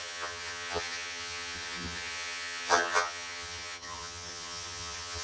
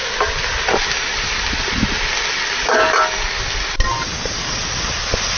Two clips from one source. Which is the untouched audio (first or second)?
second